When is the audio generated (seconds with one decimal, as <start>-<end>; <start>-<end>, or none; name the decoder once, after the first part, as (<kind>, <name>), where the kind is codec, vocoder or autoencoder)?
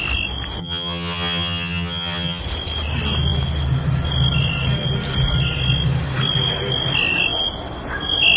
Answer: 0.6-2.4 (vocoder, HiFi-GAN)